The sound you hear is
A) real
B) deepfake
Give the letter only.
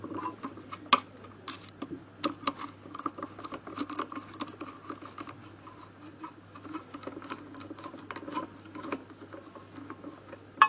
A